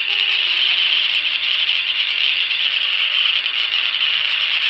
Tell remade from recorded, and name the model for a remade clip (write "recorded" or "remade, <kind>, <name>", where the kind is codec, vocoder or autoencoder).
remade, vocoder, HiFi-GAN